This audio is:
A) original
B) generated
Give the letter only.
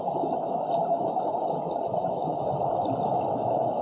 B